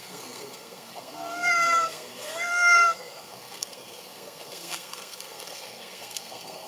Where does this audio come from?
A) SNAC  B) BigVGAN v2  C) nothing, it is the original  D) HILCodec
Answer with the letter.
A